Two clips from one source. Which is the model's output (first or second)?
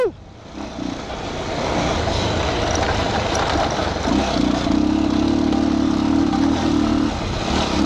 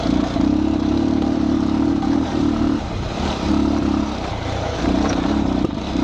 second